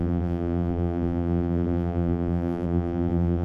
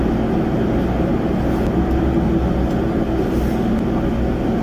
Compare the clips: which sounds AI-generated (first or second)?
first